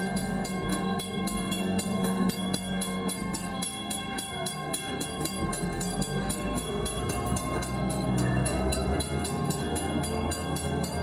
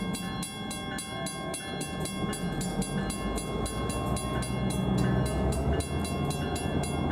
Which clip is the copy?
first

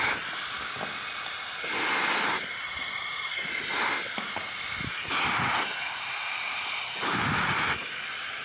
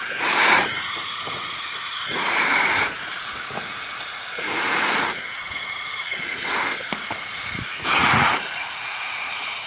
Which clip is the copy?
second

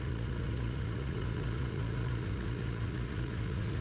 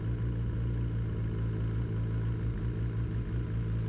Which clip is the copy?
first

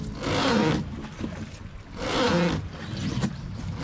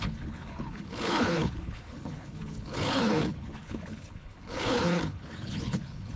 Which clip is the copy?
second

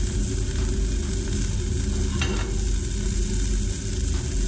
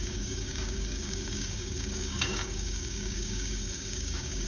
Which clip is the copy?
second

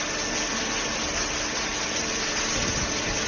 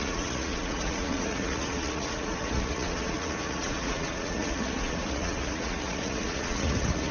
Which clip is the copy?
second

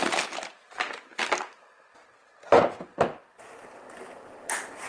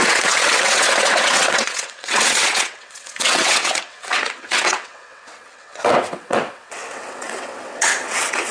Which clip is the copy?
second